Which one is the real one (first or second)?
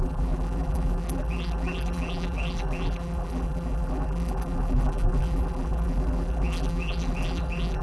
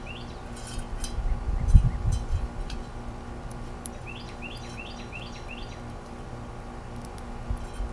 second